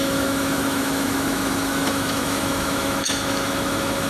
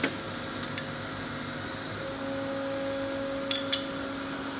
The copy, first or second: first